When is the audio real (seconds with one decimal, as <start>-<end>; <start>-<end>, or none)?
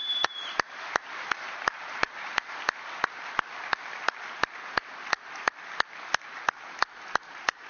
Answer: 2.5-7.7